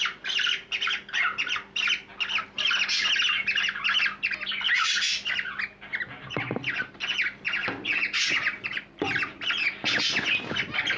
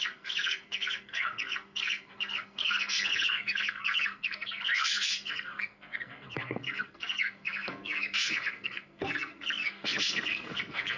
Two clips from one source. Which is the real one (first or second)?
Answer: first